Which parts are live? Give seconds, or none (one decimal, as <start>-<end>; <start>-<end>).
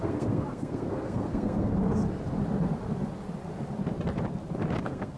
1.7-4.8